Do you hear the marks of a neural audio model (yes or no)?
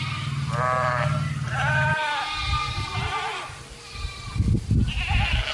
no